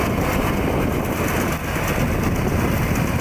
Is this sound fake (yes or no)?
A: no